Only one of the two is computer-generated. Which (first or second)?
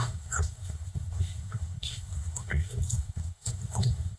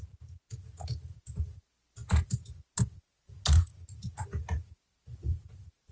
first